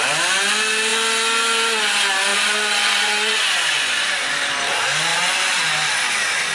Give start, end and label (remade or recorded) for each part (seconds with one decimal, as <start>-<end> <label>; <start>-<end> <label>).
0.0-2.3 recorded; 2.3-4.1 remade; 4.1-5.1 recorded; 5.1-5.6 remade; 5.6-6.5 recorded